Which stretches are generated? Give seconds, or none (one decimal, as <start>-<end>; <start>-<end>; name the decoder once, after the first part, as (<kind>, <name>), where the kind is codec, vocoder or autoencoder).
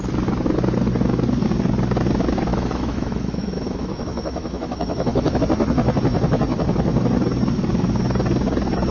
2.5-5.4 (autoencoder, DAC-VAE)